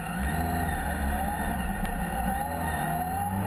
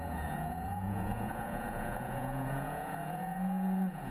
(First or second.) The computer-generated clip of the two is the second